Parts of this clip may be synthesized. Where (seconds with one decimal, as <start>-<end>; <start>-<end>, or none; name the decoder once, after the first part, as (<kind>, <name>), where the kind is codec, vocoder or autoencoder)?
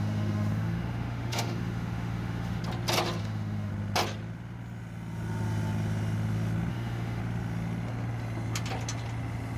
0.0-2.6 (autoencoder, DAC-VAE); 3.2-3.7; 6.7-7.2